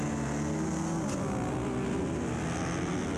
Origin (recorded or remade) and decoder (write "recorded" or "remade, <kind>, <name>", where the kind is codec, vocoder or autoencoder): recorded